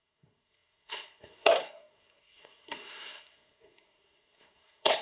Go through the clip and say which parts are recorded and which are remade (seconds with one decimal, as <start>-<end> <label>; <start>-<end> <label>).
0.0-5.0 remade